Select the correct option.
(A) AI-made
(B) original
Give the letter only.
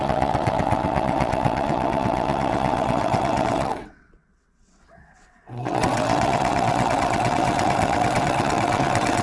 A